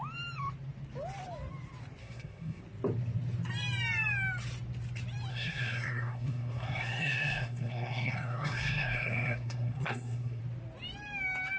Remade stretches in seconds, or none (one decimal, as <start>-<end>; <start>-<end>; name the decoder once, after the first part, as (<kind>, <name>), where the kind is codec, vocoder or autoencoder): 2.0-2.6 (codec, SNAC); 5.3-10.4